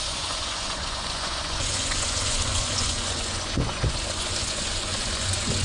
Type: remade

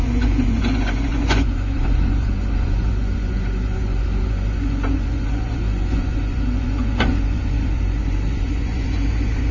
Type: remade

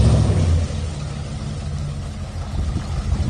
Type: recorded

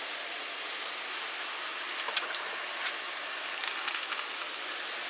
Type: recorded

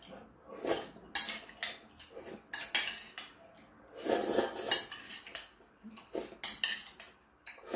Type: recorded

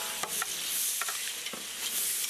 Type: recorded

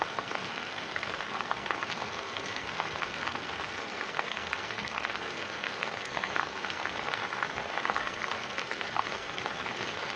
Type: remade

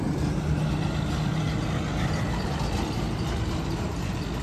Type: recorded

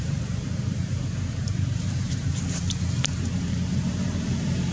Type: remade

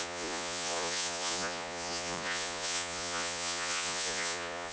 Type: remade